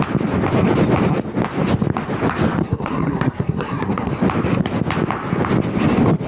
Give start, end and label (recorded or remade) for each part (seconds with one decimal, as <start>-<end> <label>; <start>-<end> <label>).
0.0-2.6 recorded; 2.6-4.1 remade; 4.1-6.3 recorded